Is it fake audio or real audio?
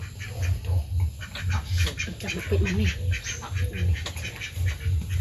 real